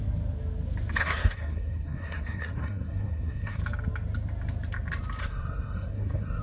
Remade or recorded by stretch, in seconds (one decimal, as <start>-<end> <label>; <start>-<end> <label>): 0.0-1.0 recorded; 1.0-3.6 remade; 3.6-5.2 recorded; 5.2-6.4 remade